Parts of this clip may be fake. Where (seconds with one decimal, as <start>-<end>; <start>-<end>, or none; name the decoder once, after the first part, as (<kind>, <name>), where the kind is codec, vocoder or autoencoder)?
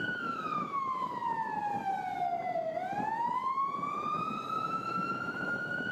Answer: 0.0-1.2 (autoencoder, DAC-VAE); 4.7-5.9